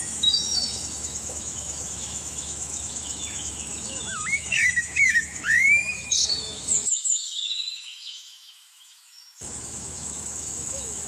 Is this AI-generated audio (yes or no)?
yes